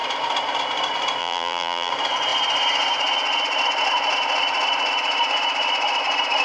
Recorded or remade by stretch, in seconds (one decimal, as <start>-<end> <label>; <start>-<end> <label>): 0.0-1.2 recorded; 1.2-1.9 remade; 1.9-6.4 recorded